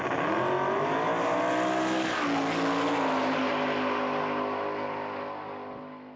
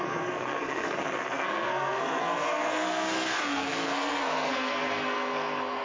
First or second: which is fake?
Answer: second